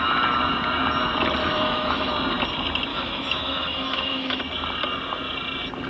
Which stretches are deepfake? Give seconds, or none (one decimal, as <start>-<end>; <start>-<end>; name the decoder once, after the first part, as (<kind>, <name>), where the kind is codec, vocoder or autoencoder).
1.4-2.1 (autoencoder, DAC-VAE); 2.9-4.4